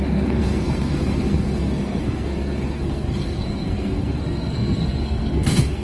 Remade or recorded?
remade